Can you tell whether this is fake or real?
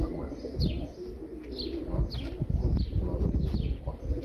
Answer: real